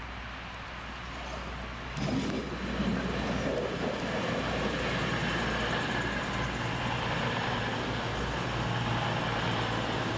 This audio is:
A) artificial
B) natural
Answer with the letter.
B